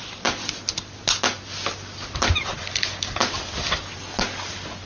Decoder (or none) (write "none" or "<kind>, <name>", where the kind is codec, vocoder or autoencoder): none